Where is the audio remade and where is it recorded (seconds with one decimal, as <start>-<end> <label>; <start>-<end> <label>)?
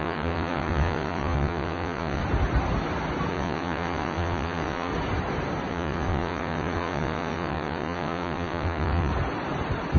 0.0-2.2 remade; 2.2-3.3 recorded; 3.3-4.9 remade; 4.9-5.7 recorded; 5.7-9.1 remade; 9.1-10.0 recorded